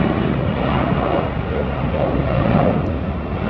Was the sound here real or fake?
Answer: fake